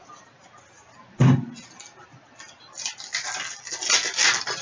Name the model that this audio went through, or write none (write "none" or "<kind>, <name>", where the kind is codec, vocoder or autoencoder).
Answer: none